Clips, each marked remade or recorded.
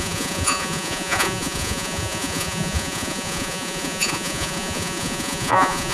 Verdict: remade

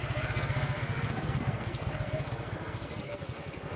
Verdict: remade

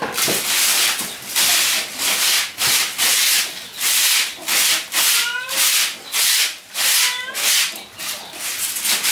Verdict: remade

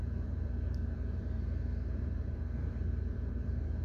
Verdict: remade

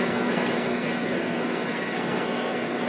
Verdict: remade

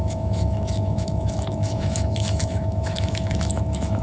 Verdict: remade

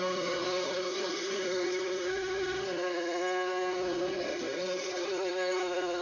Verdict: remade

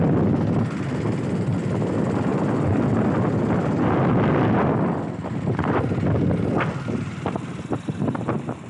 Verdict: recorded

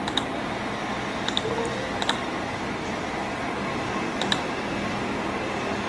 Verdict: remade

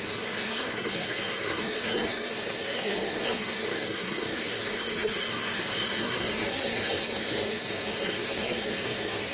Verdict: remade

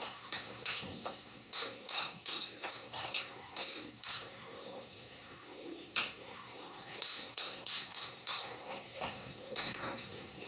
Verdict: remade